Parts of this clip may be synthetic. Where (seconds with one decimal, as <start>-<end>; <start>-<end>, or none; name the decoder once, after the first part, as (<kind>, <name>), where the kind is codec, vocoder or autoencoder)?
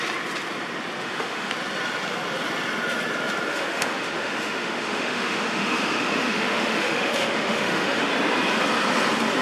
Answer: 1.0-1.5 (autoencoder, DAC-VAE); 3.5-8.1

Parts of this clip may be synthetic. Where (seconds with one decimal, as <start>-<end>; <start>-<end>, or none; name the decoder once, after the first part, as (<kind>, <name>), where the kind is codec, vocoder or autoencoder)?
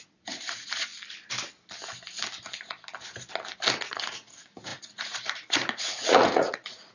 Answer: 0.0-0.9 (vocoder, Vocos); 3.8-6.9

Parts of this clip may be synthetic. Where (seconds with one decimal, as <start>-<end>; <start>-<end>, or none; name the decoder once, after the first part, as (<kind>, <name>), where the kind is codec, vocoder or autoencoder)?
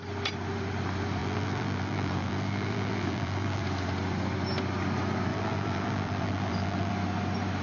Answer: 1.2-3.6 (vocoder, BigVGAN v2); 5.3-6.9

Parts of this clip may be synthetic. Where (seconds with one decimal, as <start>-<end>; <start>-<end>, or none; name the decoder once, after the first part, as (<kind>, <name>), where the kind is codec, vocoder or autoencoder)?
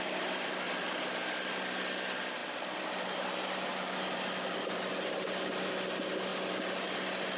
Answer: none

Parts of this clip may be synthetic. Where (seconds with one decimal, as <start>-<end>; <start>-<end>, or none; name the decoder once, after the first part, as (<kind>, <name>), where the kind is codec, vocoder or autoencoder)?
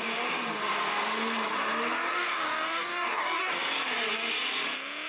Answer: 2.1-3.5 (codec, DAC)